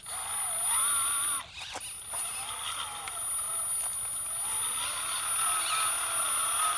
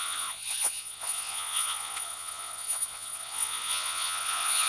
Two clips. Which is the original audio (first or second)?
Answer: first